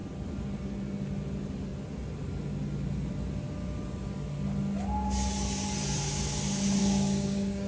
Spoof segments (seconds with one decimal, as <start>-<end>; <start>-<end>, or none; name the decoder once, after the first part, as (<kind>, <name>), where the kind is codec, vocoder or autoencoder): 6.8-7.7 (codec, DAC)